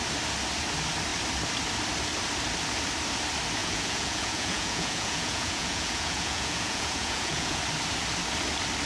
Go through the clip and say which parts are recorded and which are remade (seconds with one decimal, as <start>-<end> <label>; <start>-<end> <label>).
0.0-3.6 recorded; 3.6-7.6 remade; 7.6-8.9 recorded